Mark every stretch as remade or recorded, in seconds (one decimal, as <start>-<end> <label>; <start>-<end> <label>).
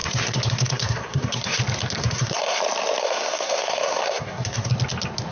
0.0-1.6 remade; 1.6-2.0 recorded; 2.0-2.6 remade; 2.6-3.0 recorded; 3.0-4.7 remade; 4.7-5.3 recorded